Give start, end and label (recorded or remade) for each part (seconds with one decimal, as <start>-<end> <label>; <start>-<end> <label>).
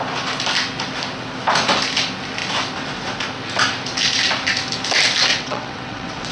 0.0-5.3 recorded; 5.3-6.3 remade